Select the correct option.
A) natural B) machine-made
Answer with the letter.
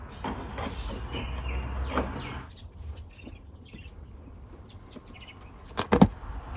A